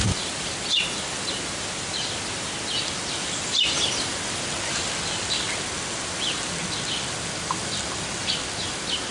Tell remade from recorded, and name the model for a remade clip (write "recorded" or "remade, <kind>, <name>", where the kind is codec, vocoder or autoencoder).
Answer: recorded